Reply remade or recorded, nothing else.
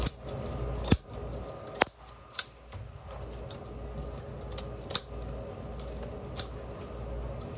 recorded